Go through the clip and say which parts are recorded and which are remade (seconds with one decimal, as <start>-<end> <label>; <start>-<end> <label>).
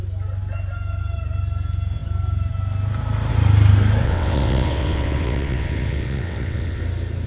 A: 0.0-4.0 recorded; 4.0-6.8 remade; 6.8-7.3 recorded